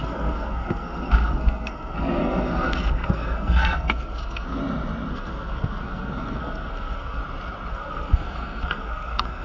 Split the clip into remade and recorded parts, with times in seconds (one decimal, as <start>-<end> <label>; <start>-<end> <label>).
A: 0.0-4.6 remade; 4.6-5.1 recorded; 5.1-7.2 remade; 7.2-7.7 recorded; 7.7-9.4 remade